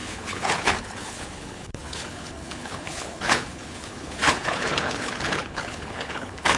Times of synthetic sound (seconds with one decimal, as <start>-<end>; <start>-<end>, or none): 0.0-6.6